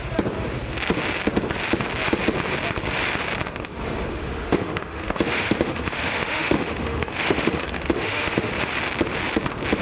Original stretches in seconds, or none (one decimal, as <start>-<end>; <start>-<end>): 0.0-4.1; 8.5-9.8